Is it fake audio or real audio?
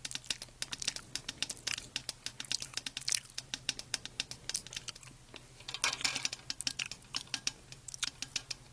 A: real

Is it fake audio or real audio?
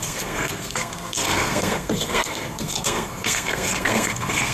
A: fake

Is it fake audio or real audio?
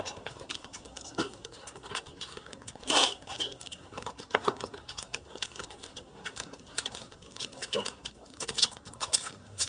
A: fake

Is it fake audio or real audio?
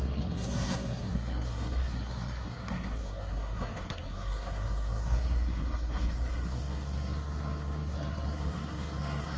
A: fake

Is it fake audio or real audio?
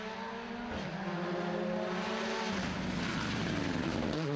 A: real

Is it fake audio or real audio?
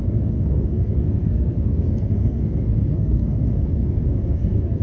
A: fake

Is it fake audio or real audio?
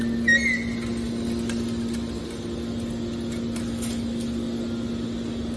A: real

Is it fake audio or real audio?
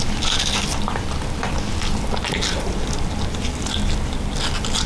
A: real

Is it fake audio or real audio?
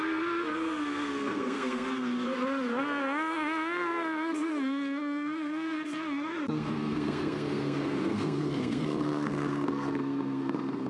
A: fake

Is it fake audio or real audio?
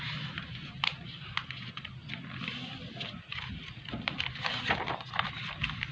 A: real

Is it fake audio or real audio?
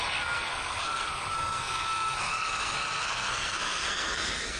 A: fake